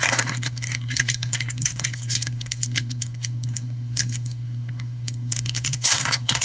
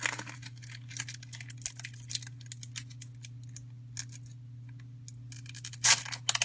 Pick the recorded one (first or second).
second